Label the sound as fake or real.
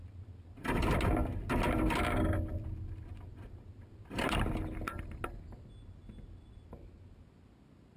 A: real